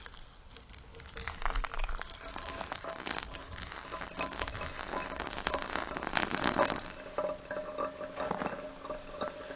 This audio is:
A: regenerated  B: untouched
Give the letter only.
B